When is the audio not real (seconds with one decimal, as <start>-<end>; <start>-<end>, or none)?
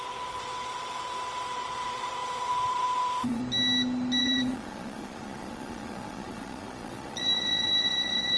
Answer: 0.0-3.4; 4.2-8.4